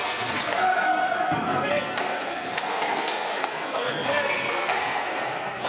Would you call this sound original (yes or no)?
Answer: no